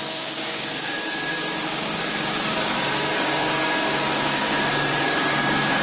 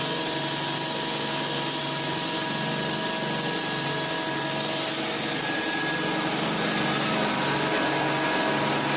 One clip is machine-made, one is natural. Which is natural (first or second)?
second